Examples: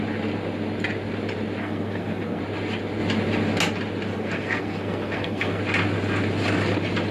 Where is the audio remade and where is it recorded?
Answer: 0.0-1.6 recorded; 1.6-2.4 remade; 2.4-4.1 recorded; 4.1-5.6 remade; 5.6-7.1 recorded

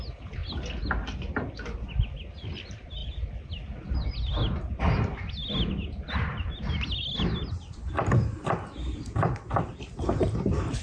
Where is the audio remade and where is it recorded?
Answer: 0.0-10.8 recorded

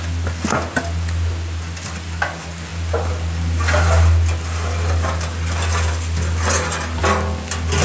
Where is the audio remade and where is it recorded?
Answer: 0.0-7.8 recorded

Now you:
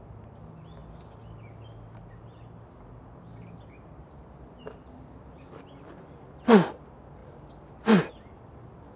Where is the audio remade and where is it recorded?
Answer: 0.0-9.0 recorded

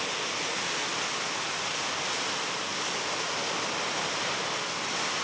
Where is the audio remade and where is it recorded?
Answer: 0.0-5.2 recorded

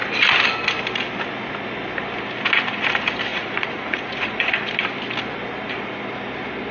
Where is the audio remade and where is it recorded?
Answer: 0.0-3.3 recorded; 3.3-4.5 remade; 4.5-6.7 recorded

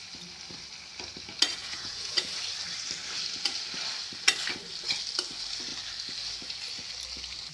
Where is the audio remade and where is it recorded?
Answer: 0.0-1.6 recorded; 1.6-2.3 remade; 2.3-7.5 recorded

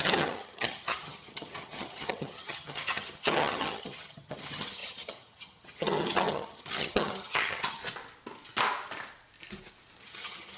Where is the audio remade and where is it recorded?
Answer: 0.0-7.8 remade; 7.8-10.0 recorded; 10.0-10.6 remade